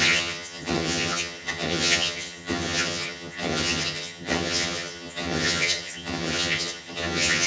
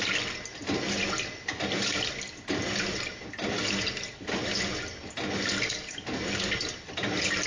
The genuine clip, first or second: second